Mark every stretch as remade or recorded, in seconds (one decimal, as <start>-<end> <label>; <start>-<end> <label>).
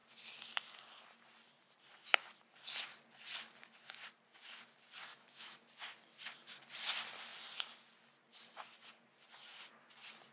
0.0-5.1 recorded; 5.1-5.6 remade; 5.6-10.3 recorded